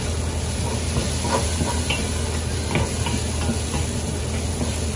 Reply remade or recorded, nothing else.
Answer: recorded